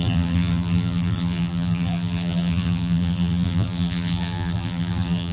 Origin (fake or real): fake